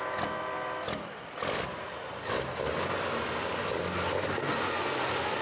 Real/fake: real